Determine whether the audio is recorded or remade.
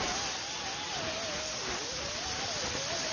recorded